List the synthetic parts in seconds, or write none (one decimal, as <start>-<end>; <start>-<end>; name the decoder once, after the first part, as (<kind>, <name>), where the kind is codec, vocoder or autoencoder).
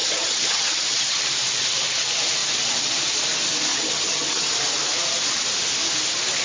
0.0-1.2 (vocoder, HiFi-GAN); 3.7-4.5